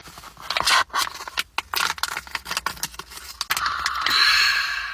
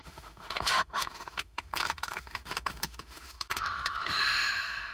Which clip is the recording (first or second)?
first